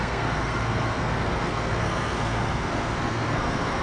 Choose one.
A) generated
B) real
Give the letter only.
A